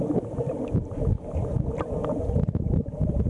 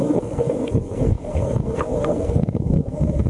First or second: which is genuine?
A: first